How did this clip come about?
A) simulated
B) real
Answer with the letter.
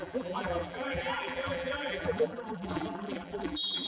A